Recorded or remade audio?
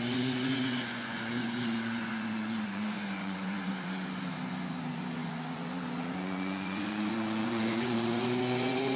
remade